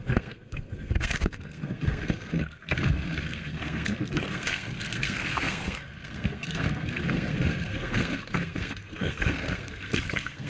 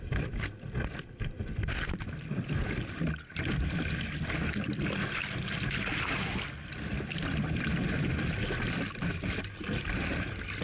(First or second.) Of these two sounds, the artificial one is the first